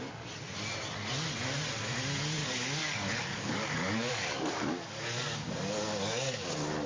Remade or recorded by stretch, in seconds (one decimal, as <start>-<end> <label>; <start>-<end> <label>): 0.0-2.4 recorded; 2.4-6.5 remade; 6.5-6.9 recorded